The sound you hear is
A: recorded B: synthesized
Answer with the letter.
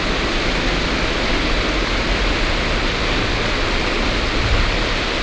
A